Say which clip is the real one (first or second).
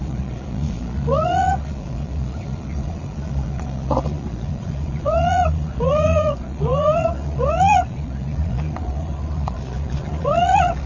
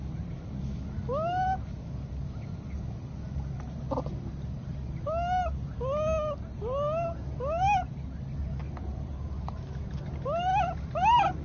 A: second